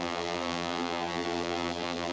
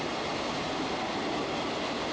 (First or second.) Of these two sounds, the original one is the second